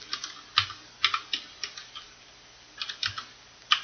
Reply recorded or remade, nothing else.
recorded